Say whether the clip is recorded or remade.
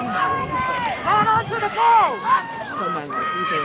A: remade